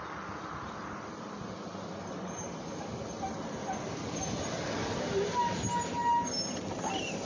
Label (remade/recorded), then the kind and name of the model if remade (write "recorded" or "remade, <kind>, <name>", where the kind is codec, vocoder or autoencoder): recorded